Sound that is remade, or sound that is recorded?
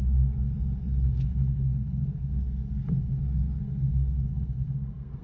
remade